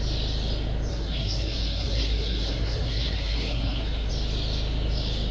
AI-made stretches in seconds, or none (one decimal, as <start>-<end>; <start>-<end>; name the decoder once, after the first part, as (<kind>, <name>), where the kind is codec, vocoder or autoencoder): 0.9-4.1 (codec, SNAC)

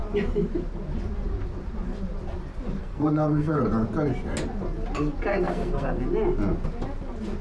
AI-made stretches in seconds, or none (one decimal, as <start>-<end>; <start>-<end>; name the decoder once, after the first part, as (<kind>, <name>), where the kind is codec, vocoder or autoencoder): 2.8-3.6 (codec, SNAC); 5.3-6.0